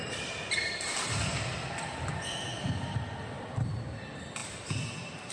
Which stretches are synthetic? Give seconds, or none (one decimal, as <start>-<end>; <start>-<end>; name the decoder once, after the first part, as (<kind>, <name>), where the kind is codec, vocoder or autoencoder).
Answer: 1.2-2.1 (vocoder, BigVGAN v2); 2.5-3.8